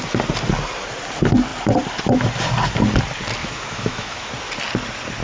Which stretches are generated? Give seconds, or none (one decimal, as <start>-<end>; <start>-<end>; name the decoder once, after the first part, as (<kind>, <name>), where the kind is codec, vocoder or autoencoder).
3.4-4.3 (autoencoder, DAC-VAE)